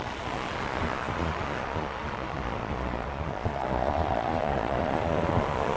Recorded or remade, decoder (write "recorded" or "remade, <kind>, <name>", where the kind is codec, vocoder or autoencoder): remade, vocoder, Vocos